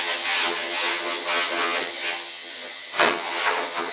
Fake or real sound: fake